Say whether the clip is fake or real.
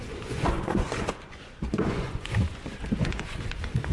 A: fake